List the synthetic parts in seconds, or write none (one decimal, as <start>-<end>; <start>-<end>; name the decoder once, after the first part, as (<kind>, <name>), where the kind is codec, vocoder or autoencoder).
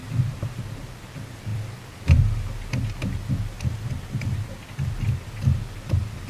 0.0-0.6 (vocoder, BigVGAN v2)